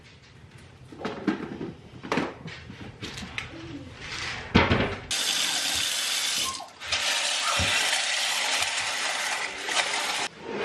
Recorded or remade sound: recorded